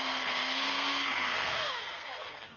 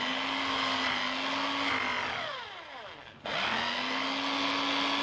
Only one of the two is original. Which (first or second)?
second